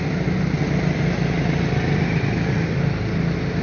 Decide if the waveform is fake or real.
real